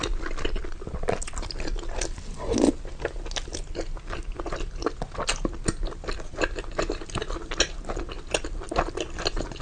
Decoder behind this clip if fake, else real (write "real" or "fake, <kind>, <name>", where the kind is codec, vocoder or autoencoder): real